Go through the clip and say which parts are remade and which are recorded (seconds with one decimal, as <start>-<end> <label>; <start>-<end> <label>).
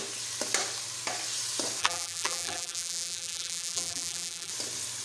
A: 0.0-1.8 recorded; 1.8-4.5 remade; 4.5-5.0 recorded